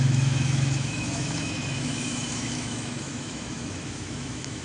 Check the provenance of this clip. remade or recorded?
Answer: remade